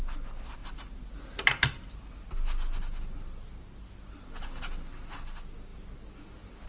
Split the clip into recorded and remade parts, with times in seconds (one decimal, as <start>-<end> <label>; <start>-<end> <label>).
0.0-6.7 recorded